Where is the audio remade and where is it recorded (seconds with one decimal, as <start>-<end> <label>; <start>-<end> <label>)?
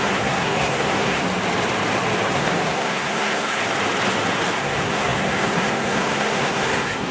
0.0-1.2 remade; 1.2-2.3 recorded; 2.3-3.6 remade; 3.6-4.6 recorded; 4.6-7.1 remade